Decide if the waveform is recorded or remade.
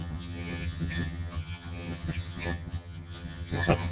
remade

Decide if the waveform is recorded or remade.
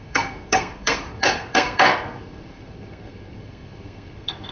remade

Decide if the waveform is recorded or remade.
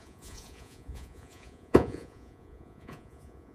remade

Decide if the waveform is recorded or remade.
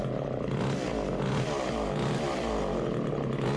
recorded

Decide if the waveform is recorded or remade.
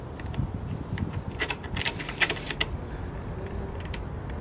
recorded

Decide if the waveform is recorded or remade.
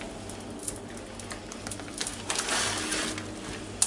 recorded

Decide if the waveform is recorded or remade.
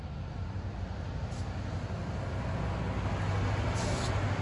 recorded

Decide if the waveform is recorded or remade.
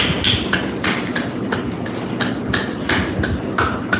recorded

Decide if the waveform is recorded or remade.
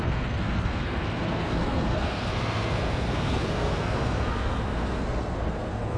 remade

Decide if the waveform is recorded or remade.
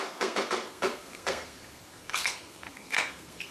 remade